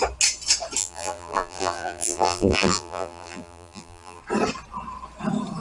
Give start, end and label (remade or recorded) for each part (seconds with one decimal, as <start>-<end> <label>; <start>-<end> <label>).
0.0-0.8 recorded; 0.8-4.2 remade; 4.2-5.6 recorded